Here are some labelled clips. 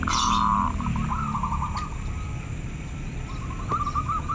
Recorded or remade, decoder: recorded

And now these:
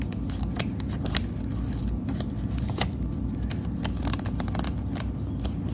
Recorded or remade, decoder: recorded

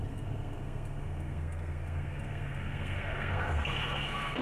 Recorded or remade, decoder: remade, codec, SNAC